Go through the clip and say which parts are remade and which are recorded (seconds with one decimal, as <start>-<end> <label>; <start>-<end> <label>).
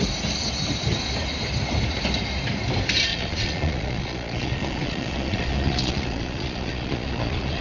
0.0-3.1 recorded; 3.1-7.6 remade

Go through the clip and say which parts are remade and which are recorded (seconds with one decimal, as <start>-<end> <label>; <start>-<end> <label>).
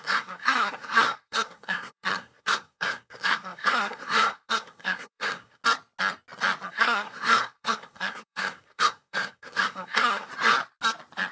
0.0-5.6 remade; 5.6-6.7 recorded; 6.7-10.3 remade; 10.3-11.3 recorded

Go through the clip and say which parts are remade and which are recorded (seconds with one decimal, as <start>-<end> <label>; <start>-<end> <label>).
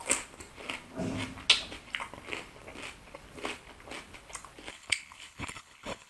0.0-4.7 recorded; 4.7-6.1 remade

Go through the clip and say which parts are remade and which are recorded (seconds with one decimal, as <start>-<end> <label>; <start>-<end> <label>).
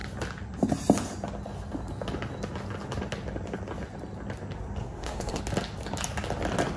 0.0-4.8 recorded; 4.8-5.4 remade; 5.4-6.8 recorded